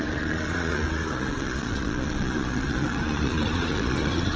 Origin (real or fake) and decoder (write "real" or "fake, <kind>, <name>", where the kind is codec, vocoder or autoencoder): fake, vocoder, Vocos